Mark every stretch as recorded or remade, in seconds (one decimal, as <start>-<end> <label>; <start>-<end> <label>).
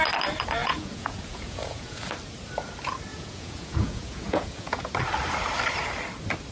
0.0-0.6 recorded; 0.6-2.0 remade; 2.0-3.1 recorded; 3.1-4.9 remade; 4.9-6.5 recorded